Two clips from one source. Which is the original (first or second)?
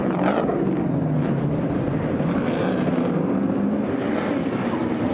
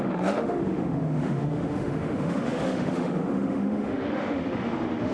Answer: first